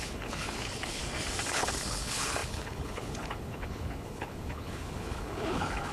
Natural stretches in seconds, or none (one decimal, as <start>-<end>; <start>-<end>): 1.0-1.5